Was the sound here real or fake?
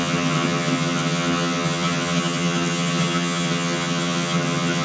fake